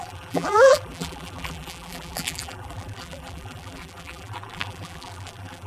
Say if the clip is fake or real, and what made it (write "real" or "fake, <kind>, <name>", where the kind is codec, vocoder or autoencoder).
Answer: fake, vocoder, BigVGAN v2